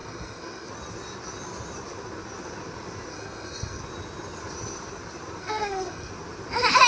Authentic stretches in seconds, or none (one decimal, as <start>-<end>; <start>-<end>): 0.7-3.1; 3.8-5.4; 6.1-6.9